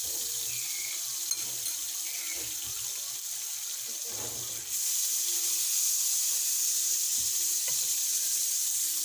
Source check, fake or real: real